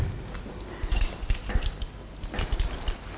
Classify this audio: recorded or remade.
recorded